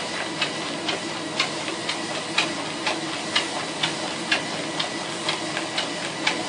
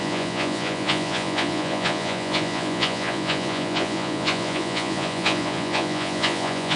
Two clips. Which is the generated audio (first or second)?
second